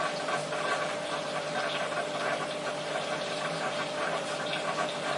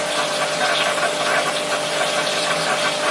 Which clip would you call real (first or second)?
second